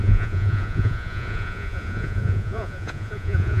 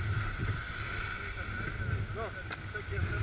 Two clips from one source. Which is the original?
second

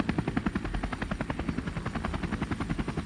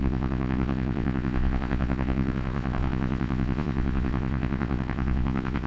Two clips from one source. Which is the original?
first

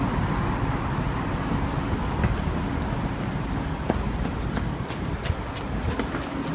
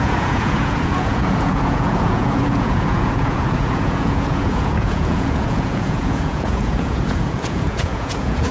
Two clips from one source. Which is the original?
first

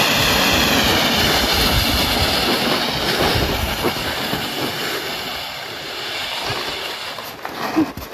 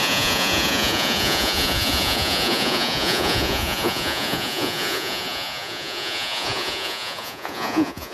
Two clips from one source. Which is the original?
first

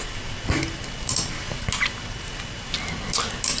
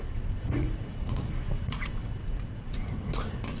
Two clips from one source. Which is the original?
first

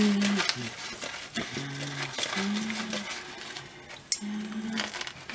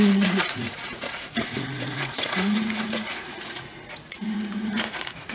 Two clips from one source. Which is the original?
first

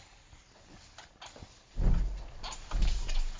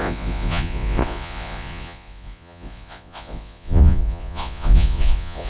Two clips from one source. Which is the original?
first